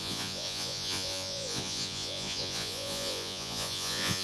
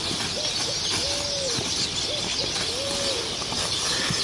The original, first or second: second